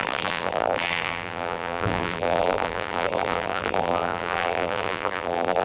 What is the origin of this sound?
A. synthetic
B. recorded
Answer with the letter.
A